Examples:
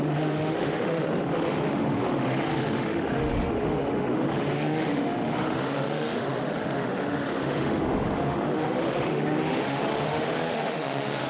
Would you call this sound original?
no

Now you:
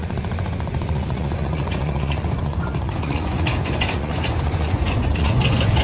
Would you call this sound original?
no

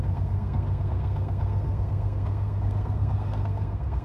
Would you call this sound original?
no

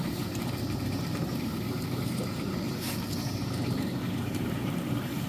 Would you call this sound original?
no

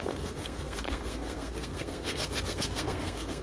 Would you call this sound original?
no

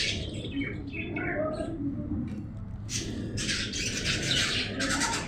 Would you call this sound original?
yes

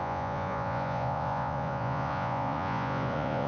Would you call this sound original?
no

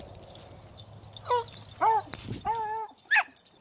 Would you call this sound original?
yes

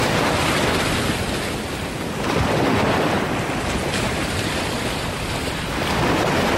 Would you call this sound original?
yes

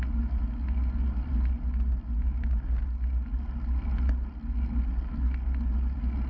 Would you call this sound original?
yes